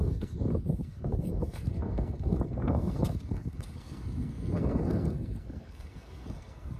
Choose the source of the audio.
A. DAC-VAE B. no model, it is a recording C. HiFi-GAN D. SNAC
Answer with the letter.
D